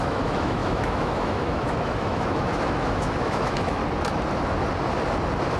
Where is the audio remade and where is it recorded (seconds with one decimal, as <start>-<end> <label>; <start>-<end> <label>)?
0.0-3.8 remade; 3.8-5.6 recorded